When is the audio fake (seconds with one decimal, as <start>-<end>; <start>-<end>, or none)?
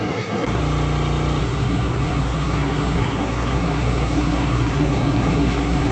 0.0-0.6; 1.4-5.9